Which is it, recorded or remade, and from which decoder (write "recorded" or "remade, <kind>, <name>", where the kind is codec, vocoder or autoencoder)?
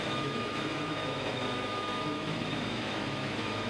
remade, autoencoder, DAC-VAE